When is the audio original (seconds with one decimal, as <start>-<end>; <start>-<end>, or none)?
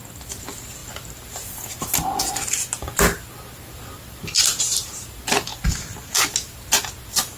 0.0-7.4